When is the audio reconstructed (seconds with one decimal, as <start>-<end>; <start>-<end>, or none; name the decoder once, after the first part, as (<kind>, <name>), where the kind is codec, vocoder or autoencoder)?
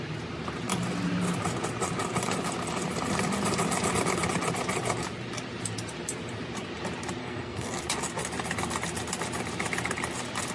7.2-7.8 (codec, SNAC)